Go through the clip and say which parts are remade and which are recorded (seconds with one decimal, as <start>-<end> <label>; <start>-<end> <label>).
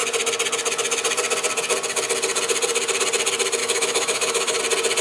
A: 0.0-3.6 recorded; 3.6-4.6 remade; 4.6-5.0 recorded